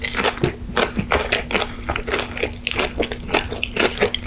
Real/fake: real